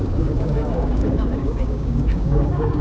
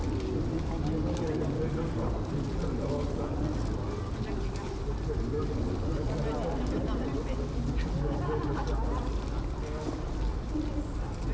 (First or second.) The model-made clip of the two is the first